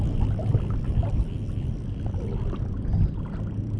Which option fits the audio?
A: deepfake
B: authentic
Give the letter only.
B